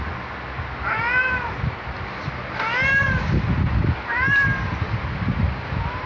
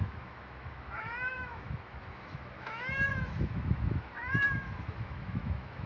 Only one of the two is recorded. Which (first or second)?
first